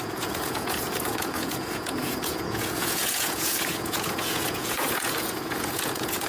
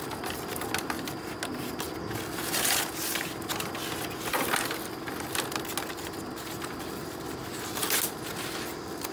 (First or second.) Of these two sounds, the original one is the second